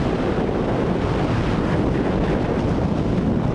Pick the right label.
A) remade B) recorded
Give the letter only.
B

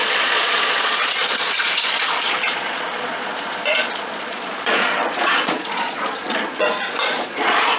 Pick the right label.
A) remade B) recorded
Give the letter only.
A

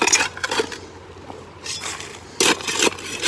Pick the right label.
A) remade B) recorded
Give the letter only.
B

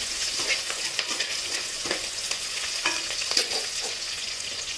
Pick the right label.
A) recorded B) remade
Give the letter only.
B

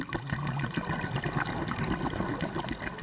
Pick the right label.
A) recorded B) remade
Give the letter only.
A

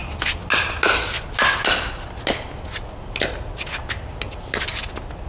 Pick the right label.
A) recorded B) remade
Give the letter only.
A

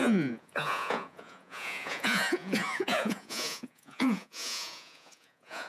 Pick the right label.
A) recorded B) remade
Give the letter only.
B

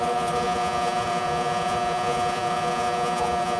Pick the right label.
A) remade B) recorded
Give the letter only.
A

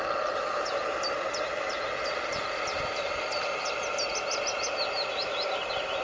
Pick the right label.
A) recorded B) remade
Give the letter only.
A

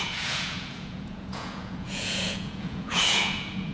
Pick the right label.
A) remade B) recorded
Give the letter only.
A